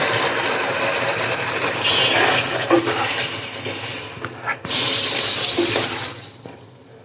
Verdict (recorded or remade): recorded